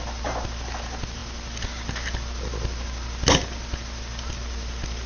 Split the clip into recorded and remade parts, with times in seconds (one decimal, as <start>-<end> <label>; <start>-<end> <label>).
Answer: 0.0-5.1 recorded